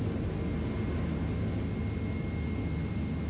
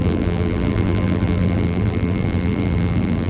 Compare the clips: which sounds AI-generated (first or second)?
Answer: second